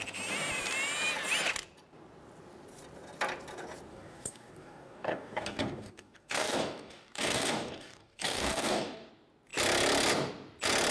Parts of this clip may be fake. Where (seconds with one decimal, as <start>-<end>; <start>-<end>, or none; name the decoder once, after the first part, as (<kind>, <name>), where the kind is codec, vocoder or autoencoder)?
3.9-9.1 (codec, DAC)